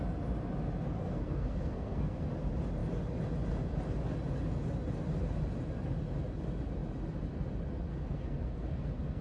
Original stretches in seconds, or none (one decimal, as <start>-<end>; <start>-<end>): 0.0-1.0; 2.3-7.9